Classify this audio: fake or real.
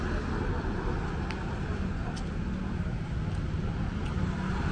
real